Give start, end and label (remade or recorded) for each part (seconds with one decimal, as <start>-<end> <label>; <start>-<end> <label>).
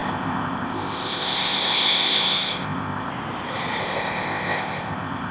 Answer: 0.0-3.1 remade; 3.1-3.8 recorded; 3.8-5.3 remade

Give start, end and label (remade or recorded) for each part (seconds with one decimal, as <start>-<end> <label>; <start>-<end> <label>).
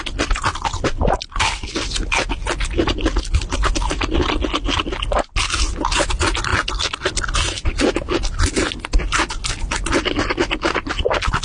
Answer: 0.0-11.4 recorded